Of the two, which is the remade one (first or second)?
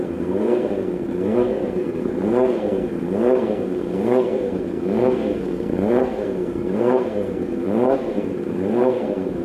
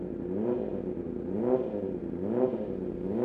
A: first